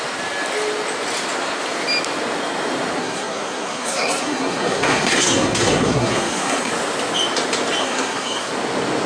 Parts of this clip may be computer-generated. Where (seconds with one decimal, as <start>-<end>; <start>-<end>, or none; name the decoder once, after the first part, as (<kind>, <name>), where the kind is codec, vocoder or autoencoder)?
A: 3.0-6.7 (codec, SNAC); 7.8-8.5